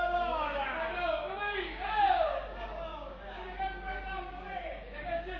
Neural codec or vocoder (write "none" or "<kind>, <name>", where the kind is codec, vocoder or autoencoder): codec, DAC